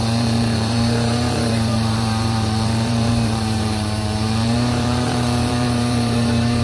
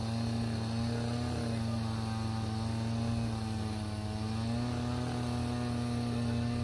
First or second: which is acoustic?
second